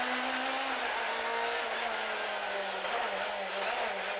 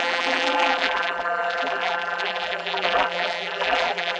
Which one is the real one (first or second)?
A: first